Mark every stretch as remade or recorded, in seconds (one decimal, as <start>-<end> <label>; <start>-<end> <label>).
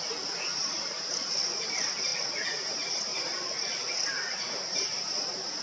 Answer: 0.0-0.6 recorded; 0.6-1.3 remade; 1.3-2.1 recorded; 2.1-2.7 remade; 2.7-3.1 recorded; 3.1-4.2 remade; 4.2-5.6 recorded